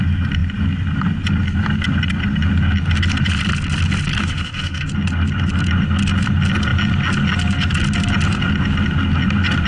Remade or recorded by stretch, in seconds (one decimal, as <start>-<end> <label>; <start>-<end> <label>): 0.0-4.2 recorded; 4.2-4.9 remade; 4.9-9.7 recorded